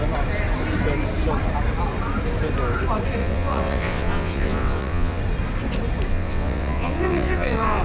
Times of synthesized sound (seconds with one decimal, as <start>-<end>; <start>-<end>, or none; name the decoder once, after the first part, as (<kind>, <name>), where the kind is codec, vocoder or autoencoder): 3.2-5.2 (vocoder, WaveNeXt); 6.1-7.8

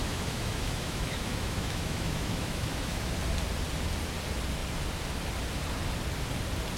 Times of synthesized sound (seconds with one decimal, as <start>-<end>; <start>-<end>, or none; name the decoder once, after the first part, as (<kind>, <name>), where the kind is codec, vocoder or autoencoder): 0.0-3.1 (autoencoder, DAC-VAE)

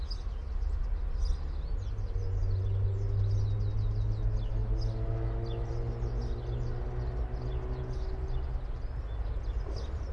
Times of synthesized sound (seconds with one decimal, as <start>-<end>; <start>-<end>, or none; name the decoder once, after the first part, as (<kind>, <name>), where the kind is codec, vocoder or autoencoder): none

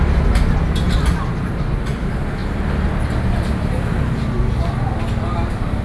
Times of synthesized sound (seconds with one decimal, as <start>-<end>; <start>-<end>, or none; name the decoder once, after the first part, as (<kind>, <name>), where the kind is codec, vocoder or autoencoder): none

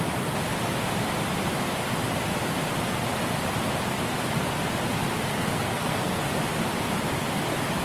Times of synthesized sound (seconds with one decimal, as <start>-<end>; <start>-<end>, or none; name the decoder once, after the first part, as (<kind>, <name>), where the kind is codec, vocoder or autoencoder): 5.3-6.2 (codec, SNAC)

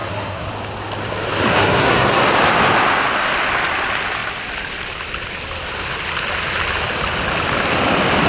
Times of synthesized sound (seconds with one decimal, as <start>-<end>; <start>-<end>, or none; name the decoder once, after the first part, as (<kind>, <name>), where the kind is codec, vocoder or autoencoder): 0.0-0.5 (codec, SNAC); 1.5-2.2